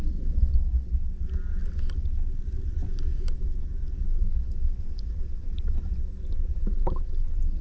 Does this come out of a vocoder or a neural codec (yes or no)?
no